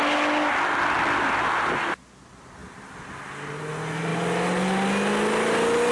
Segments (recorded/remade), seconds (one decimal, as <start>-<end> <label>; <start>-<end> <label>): 0.0-5.9 recorded